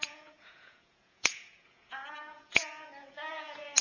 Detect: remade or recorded remade